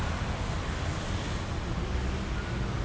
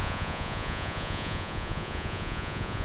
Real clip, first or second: first